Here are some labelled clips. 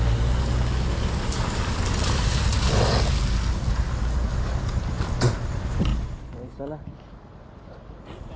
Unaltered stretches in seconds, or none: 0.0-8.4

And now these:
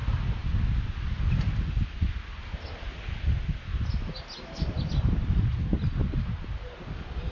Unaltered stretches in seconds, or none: 0.0-7.3

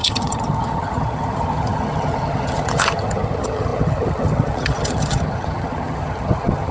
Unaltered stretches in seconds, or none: none

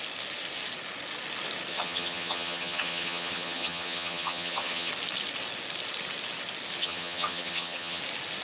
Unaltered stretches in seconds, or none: 0.0-1.7; 4.9-6.8; 8.0-8.4

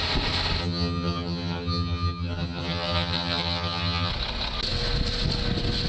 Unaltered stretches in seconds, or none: 0.0-0.6; 4.1-5.9

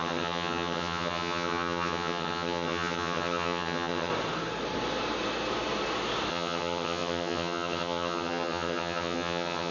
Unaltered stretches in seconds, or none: 4.1-6.3